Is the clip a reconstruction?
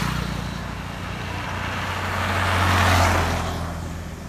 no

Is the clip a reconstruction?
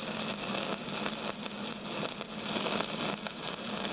no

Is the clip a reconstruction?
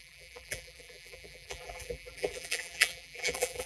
yes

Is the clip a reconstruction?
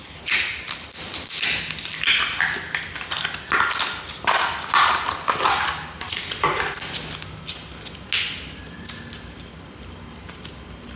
no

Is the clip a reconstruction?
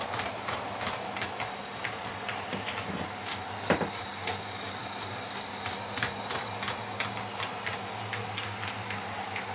no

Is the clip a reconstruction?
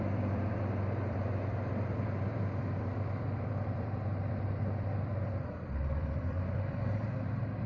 yes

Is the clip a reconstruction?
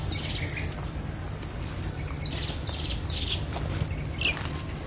no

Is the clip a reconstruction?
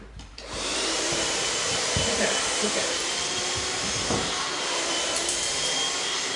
yes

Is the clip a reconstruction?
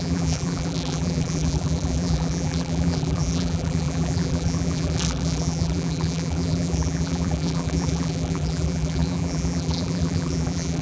yes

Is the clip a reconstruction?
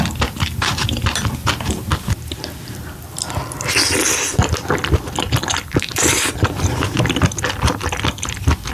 yes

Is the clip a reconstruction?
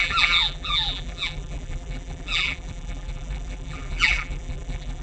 yes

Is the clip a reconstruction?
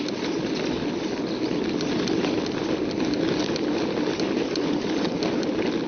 no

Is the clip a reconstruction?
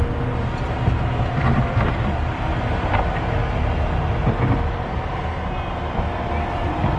no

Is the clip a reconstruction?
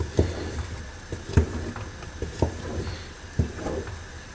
no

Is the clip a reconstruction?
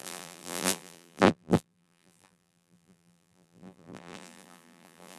yes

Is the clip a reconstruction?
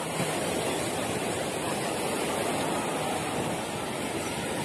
no